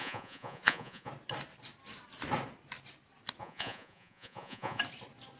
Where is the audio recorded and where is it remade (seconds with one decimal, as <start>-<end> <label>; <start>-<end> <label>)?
0.0-1.1 remade; 1.1-3.4 recorded; 3.4-4.8 remade; 4.8-5.4 recorded